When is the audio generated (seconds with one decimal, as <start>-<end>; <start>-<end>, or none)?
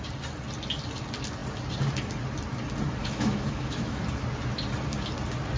3.0-4.0